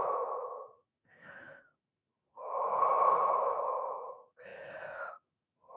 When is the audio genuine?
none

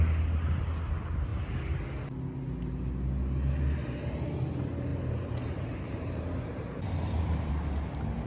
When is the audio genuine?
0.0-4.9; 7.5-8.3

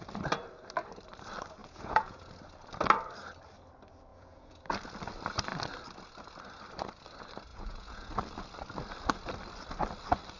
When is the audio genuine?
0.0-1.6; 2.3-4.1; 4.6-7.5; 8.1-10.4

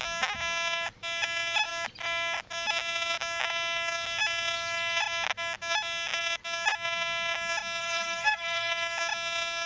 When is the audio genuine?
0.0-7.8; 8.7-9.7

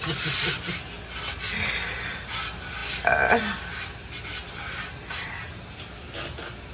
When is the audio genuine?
0.0-6.7